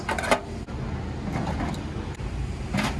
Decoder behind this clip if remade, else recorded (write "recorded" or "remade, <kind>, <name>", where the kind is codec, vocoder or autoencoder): recorded